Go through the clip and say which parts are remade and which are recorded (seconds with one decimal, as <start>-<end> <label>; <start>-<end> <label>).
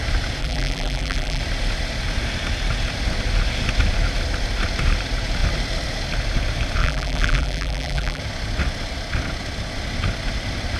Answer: 0.0-0.4 recorded; 0.4-1.4 remade; 1.4-6.8 recorded; 6.8-8.2 remade; 8.2-10.8 recorded